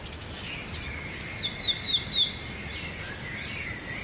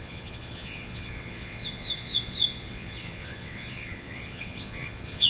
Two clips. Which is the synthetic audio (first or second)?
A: second